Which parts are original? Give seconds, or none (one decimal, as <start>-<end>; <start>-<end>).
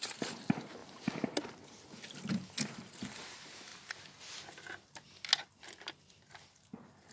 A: 0.0-7.1